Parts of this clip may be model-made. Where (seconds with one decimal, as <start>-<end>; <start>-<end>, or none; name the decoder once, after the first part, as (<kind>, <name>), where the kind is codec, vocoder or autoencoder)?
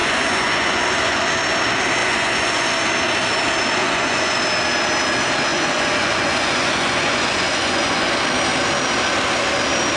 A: 0.0-1.3 (vocoder, Vocos); 2.0-2.8; 3.8-4.4; 5.5-8.1